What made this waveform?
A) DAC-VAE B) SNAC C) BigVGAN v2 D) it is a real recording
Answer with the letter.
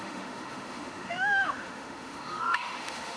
A